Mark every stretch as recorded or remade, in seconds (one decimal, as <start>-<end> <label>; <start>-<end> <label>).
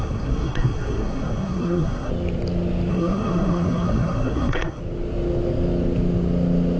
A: 0.0-2.1 remade; 2.1-2.9 recorded; 2.9-4.8 remade; 4.8-6.8 recorded